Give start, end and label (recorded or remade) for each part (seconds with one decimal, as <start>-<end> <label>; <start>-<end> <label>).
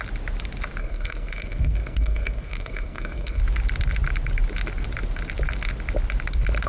0.0-0.8 recorded; 0.8-3.4 remade; 3.4-6.7 recorded